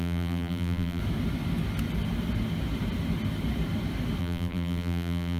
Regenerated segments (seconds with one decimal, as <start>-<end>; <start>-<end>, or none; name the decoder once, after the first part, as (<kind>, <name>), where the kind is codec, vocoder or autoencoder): 0.0-1.0 (vocoder, BigVGAN v2); 4.2-5.4

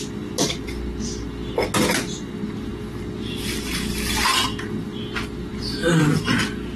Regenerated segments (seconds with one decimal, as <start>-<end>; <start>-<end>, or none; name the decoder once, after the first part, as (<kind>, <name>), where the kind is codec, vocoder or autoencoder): none

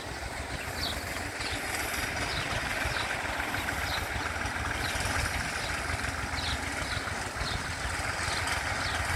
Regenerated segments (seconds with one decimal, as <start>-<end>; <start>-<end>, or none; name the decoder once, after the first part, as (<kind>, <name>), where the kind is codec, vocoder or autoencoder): 2.7-5.6 (vocoder, BigVGAN v2)

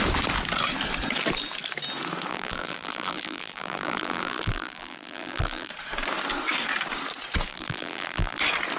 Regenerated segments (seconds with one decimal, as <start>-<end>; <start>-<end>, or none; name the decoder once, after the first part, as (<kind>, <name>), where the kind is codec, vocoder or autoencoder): 2.3-5.7 (vocoder, BigVGAN v2); 7.5-8.4

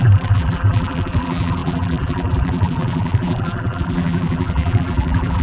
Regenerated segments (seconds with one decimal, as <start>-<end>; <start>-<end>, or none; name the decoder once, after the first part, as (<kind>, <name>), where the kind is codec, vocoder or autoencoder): 0.0-5.4 (vocoder, BigVGAN v2)

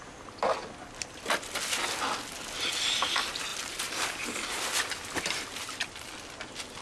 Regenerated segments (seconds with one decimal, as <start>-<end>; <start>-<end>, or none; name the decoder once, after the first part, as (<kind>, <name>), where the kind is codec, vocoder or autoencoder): 3.5-4.6 (vocoder, BigVGAN v2); 5.5-6.1

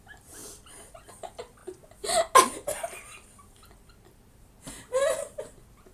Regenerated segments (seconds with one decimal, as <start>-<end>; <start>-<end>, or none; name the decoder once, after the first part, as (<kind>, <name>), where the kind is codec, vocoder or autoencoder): none